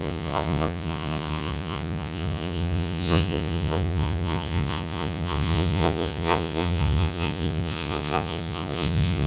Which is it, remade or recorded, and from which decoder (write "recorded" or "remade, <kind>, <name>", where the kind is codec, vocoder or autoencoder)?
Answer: remade, vocoder, Vocos